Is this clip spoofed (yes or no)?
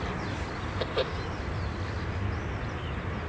no